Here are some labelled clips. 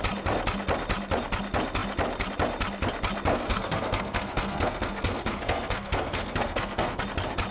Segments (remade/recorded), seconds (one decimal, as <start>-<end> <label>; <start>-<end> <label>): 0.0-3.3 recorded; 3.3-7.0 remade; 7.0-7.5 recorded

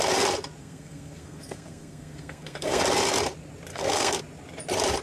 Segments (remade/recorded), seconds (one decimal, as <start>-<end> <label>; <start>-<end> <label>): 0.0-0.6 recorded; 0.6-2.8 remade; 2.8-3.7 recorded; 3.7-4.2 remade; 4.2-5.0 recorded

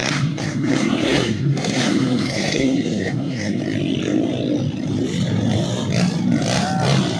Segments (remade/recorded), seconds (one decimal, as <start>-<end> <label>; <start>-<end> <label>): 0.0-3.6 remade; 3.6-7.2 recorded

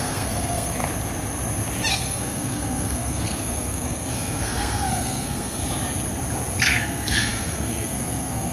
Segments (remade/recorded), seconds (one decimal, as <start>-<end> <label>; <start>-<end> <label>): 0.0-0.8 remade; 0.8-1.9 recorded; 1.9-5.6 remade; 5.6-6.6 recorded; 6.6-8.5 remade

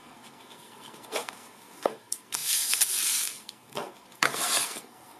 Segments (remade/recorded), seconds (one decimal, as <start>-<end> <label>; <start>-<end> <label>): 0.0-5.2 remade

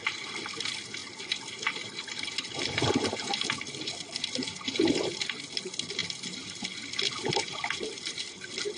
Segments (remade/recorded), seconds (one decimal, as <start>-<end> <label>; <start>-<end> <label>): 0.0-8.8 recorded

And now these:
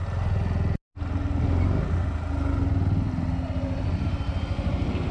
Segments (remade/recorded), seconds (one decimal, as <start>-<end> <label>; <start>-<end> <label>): 0.0-5.1 recorded

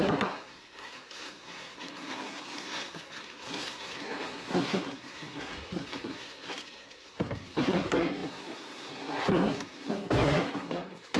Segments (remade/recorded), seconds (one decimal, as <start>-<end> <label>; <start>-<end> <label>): 0.0-11.2 remade